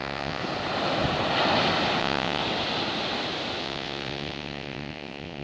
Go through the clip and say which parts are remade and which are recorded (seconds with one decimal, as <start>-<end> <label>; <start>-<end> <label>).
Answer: 0.0-0.4 remade; 0.4-2.0 recorded; 2.0-2.4 remade; 2.4-3.6 recorded; 3.6-5.4 remade

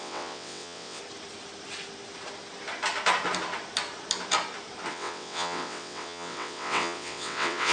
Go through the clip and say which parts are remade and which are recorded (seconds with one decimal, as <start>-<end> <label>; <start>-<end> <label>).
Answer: 0.0-1.0 remade; 1.0-4.9 recorded; 4.9-7.7 remade